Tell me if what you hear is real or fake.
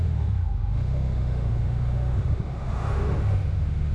fake